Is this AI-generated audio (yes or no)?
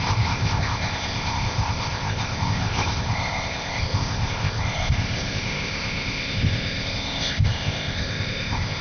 yes